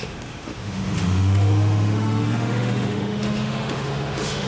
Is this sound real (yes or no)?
no